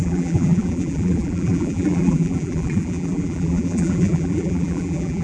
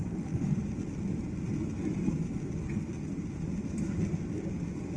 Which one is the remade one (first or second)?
first